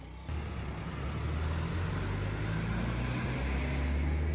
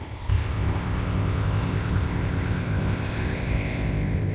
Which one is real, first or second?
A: first